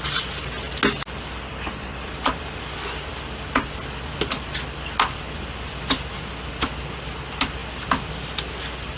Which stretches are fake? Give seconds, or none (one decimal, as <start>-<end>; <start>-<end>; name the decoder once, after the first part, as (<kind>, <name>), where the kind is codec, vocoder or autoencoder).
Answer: none